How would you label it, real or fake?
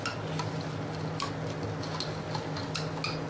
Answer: real